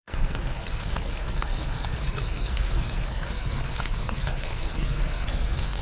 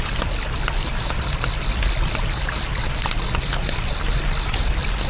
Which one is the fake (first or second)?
first